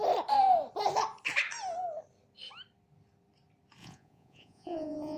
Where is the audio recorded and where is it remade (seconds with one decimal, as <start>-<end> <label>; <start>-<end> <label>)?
0.0-3.8 recorded; 3.8-5.2 remade

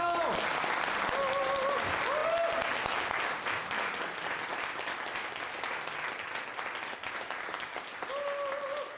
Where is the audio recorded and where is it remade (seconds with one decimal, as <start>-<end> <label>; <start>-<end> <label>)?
0.0-9.0 recorded

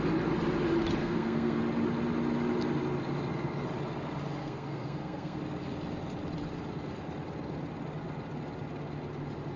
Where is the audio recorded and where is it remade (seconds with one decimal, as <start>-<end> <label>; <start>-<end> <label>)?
0.0-1.0 recorded; 1.0-1.6 remade; 1.6-4.4 recorded; 4.4-5.4 remade; 5.4-9.6 recorded

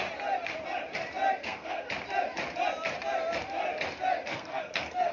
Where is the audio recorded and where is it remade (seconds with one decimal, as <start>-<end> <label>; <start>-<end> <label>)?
0.0-1.4 recorded; 1.4-1.9 remade; 1.9-4.3 recorded; 4.3-5.1 remade

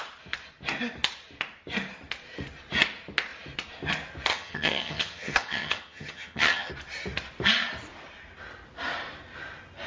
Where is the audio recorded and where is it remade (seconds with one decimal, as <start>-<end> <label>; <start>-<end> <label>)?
0.0-4.3 recorded; 4.3-6.7 remade; 6.7-9.9 recorded

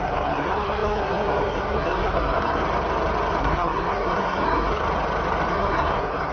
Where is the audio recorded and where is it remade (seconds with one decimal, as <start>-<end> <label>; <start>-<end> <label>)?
0.0-2.6 remade; 2.6-3.4 recorded; 3.4-4.8 remade; 4.8-5.5 recorded; 5.5-6.3 remade

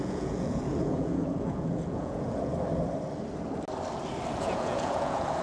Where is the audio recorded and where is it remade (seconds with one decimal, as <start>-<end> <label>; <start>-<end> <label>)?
0.0-2.5 remade; 2.5-4.4 recorded; 4.4-5.4 remade

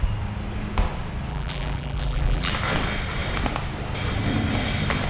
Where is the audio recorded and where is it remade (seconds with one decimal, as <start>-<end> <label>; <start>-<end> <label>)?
0.0-1.3 recorded; 1.3-2.5 remade; 2.5-5.1 recorded